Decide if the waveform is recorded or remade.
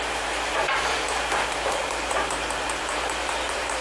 remade